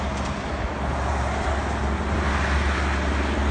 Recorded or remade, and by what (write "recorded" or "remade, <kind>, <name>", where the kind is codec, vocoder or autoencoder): recorded